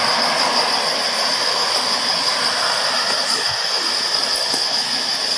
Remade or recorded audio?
recorded